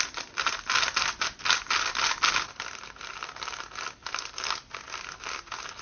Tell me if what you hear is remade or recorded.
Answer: recorded